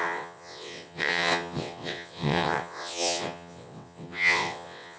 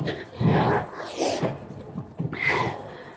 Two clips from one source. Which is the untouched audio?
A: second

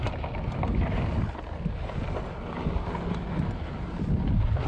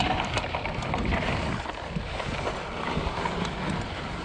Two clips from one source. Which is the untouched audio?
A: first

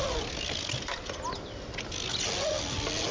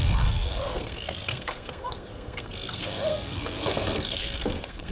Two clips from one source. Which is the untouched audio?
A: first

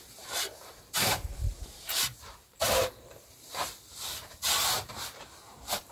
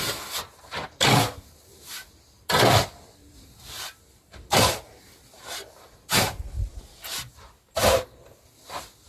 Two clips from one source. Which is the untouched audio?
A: second